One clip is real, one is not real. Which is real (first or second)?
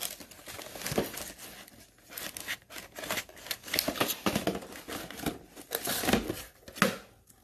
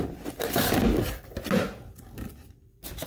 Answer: first